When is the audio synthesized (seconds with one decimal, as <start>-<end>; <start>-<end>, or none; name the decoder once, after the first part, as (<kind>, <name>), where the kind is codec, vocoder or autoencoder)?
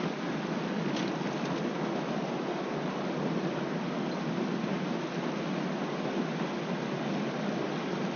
none